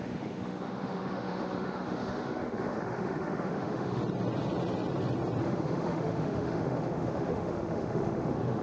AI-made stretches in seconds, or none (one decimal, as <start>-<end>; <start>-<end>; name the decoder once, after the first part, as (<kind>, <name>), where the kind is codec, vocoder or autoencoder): 0.0-4.0 (autoencoder, DAC-VAE); 5.4-8.6